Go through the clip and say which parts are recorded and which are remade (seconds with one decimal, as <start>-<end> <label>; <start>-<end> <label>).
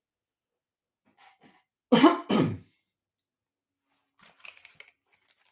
0.0-5.5 recorded